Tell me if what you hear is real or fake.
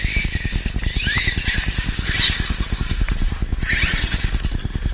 real